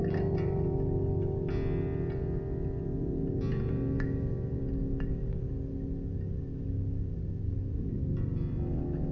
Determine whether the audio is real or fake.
real